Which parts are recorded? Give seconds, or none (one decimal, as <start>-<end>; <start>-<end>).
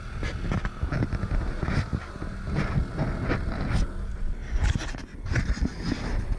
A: 0.0-6.4